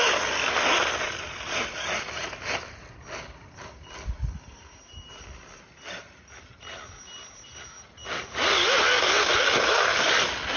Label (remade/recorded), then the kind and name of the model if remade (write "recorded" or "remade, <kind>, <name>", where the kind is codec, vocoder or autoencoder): recorded